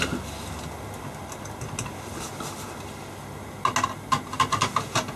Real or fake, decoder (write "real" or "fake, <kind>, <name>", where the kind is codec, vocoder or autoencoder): real